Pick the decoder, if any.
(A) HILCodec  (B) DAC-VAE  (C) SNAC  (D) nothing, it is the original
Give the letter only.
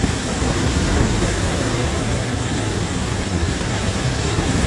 C